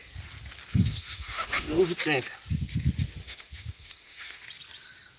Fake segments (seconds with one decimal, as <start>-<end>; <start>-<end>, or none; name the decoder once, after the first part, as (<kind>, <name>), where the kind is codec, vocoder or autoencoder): 0.7-1.8 (autoencoder, DAC-VAE); 3.2-4.4